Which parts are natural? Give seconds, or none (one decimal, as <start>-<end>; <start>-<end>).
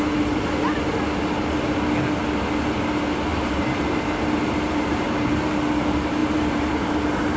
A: 0.0-3.3; 5.6-6.2; 6.8-7.4